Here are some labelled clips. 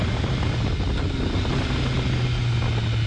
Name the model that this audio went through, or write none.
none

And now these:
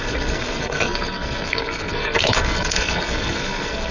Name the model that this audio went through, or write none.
codec, SNAC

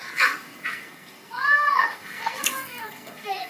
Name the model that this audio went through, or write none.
codec, SNAC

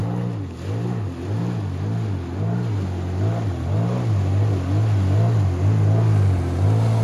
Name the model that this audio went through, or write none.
none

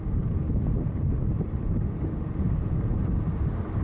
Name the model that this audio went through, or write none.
none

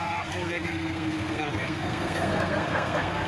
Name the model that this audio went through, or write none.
codec, SNAC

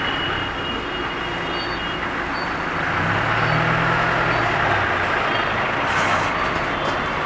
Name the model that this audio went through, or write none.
none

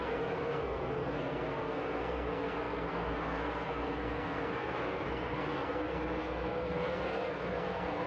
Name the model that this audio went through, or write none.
codec, SNAC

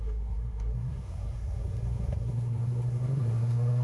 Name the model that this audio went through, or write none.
codec, SNAC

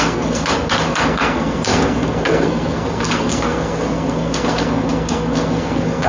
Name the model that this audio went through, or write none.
codec, SNAC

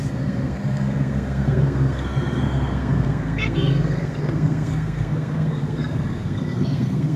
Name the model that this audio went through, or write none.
codec, SNAC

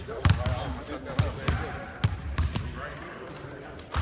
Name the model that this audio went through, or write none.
none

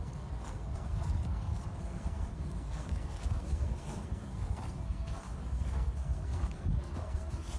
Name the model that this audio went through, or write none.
codec, SNAC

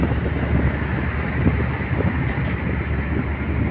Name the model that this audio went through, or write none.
none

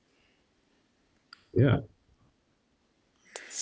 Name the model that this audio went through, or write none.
none